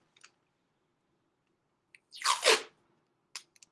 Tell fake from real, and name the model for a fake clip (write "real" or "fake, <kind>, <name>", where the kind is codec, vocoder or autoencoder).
real